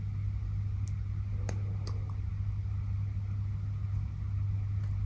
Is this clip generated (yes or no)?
no